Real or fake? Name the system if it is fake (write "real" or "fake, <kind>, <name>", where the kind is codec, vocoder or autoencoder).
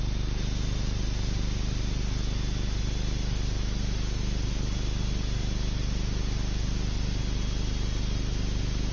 real